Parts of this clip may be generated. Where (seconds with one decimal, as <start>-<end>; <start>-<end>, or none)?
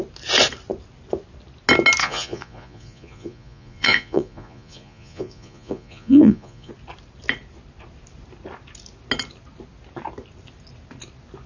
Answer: 2.0-6.7